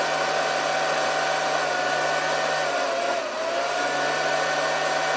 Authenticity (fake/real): real